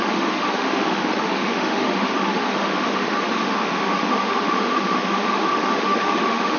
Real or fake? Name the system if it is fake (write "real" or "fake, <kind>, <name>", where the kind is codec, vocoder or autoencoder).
fake, autoencoder, DAC-VAE